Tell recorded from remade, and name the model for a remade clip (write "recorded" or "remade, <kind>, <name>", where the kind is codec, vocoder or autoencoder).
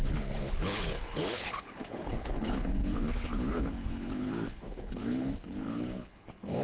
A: remade, codec, HILCodec